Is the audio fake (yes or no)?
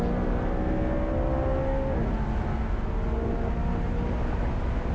no